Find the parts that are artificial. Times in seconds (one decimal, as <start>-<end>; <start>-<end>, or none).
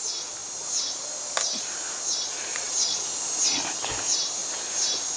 2.5-3.0